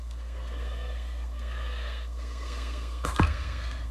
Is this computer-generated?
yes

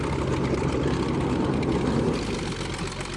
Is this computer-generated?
no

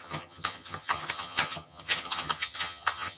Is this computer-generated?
yes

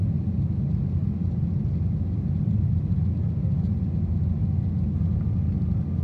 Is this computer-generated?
no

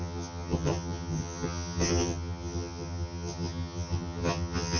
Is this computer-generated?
yes